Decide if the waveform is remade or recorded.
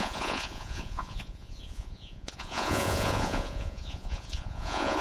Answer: remade